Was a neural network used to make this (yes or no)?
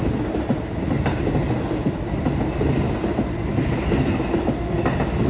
no